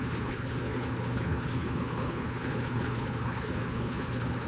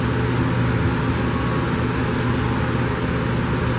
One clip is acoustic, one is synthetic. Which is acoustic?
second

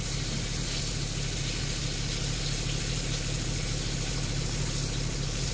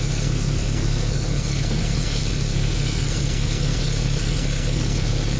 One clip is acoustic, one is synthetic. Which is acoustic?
first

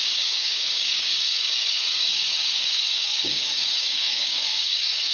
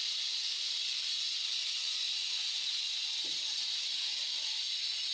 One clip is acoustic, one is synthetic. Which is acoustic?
second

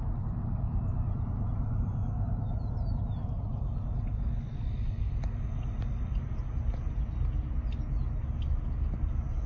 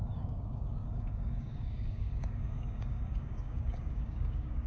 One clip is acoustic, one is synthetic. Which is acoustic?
first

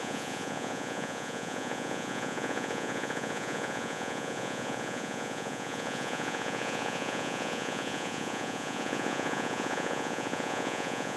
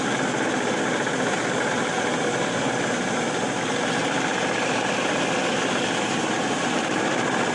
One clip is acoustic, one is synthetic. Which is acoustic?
second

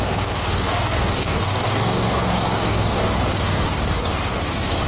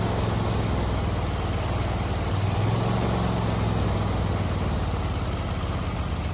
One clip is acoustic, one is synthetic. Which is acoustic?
second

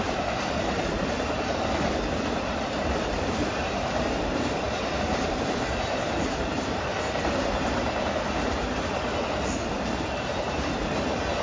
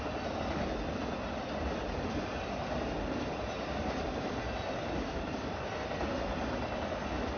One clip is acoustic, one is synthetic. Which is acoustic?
second